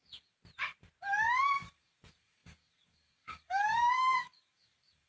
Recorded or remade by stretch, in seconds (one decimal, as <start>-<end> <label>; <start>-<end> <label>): 0.0-0.4 remade; 0.4-1.2 recorded; 1.2-5.1 remade